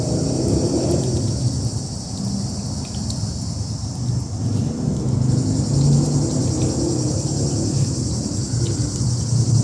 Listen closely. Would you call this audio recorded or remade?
recorded